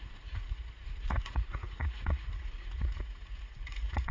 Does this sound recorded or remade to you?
remade